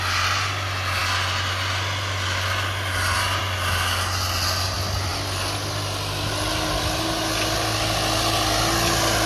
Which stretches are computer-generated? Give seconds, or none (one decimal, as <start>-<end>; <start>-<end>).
none